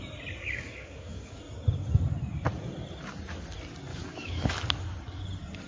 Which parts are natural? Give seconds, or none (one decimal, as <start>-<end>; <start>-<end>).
0.0-0.4; 1.4-3.9; 4.5-5.7